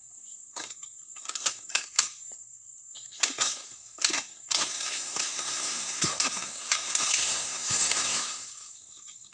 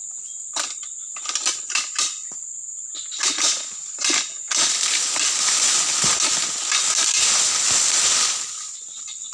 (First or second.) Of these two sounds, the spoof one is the first